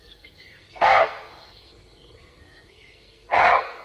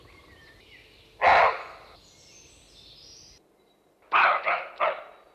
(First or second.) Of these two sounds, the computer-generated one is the first